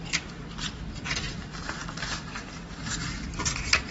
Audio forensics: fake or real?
real